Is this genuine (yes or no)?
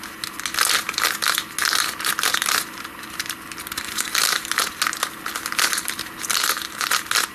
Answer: yes